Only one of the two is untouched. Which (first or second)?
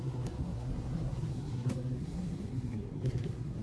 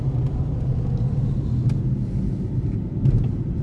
second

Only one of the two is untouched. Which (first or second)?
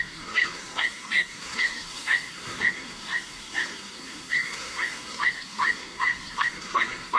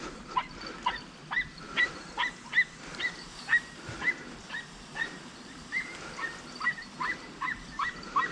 second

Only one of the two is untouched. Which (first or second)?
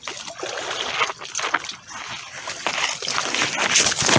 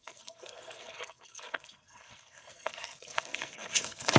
first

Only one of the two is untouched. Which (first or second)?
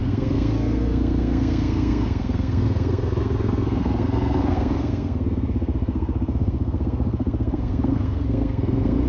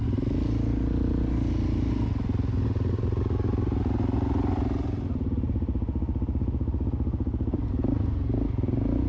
second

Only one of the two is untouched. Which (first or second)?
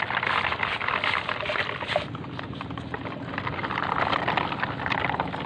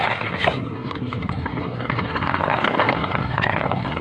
first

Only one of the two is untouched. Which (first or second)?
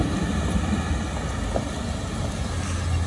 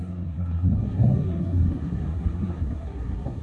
first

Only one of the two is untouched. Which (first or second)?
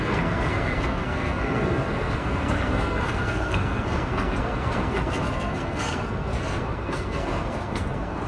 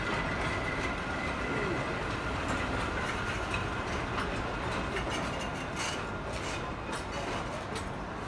second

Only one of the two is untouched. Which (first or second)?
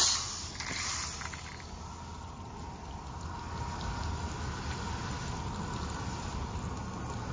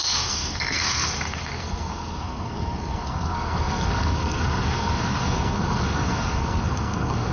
first